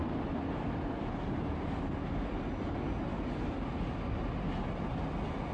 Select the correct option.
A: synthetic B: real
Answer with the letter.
B